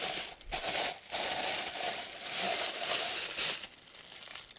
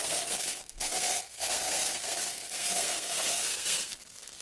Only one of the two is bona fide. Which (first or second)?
first